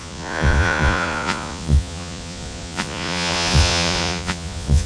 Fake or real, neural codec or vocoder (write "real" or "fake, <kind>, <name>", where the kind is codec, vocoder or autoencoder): fake, vocoder, Vocos